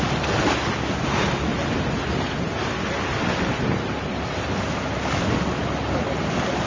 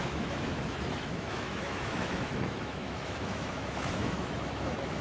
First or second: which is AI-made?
second